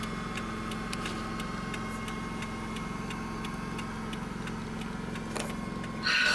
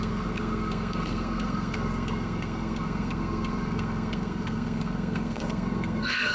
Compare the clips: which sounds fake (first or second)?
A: second